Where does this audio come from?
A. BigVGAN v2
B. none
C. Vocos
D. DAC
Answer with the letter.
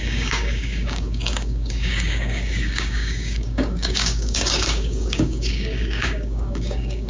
D